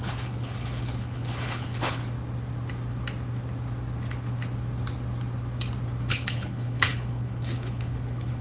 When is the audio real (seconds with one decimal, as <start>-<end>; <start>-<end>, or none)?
2.0-6.1